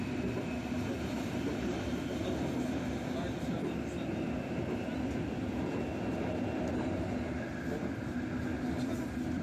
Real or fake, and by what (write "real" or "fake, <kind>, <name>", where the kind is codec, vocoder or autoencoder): real